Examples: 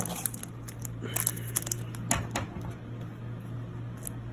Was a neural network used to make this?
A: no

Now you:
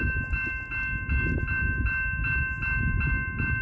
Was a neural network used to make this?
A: no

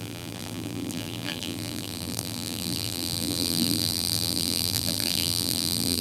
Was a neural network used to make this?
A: yes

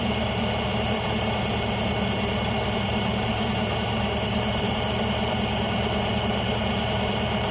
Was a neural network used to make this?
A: yes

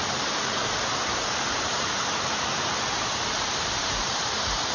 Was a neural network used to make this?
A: yes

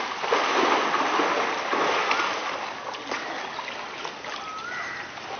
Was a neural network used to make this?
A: no